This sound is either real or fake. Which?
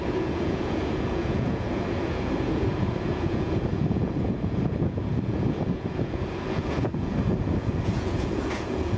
fake